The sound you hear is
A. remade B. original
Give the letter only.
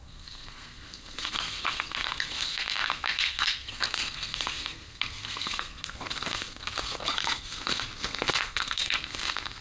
A